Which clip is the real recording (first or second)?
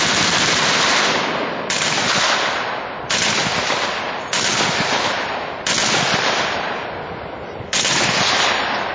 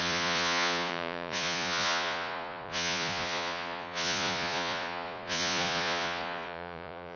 first